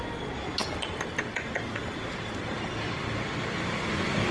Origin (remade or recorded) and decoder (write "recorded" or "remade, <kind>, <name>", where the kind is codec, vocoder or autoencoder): recorded